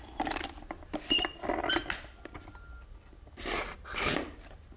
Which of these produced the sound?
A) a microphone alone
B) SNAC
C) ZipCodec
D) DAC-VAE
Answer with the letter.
A